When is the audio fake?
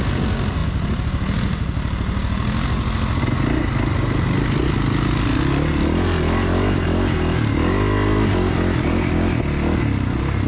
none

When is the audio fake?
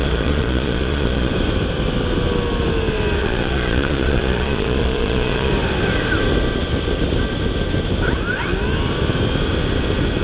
0.0-1.3 (vocoder, Vocos); 3.2-5.5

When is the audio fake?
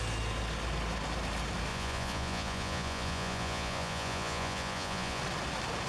1.7-5.2 (vocoder, Vocos)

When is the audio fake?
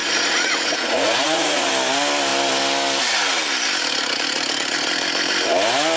0.0-1.7 (vocoder, Vocos)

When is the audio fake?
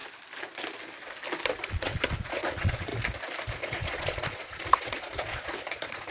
1.6-2.9 (vocoder, Vocos); 3.6-6.1